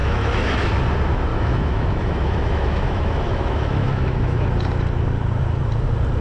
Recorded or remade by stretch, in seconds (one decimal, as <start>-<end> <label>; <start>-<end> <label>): 0.0-0.7 remade; 0.7-1.3 recorded; 1.3-4.5 remade; 4.5-6.2 recorded